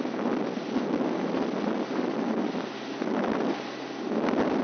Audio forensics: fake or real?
real